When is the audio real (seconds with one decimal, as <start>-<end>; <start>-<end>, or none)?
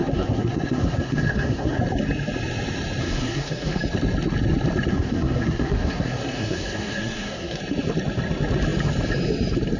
1.8-3.0; 3.8-4.9; 7.6-9.8